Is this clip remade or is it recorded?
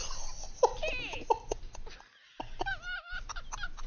recorded